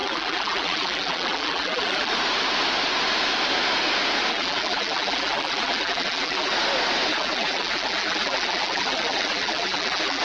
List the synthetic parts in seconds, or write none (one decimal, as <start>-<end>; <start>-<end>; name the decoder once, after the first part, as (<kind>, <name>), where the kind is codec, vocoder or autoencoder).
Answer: 0.0-2.1 (vocoder, BigVGAN v2); 4.3-6.5; 7.1-10.2